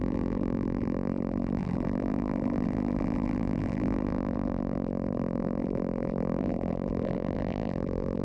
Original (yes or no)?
no